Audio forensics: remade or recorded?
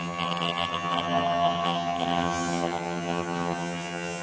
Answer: remade